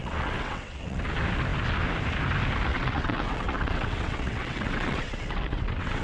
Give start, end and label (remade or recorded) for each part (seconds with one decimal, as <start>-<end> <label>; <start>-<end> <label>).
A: 0.0-1.1 remade; 1.1-2.7 recorded; 2.7-6.0 remade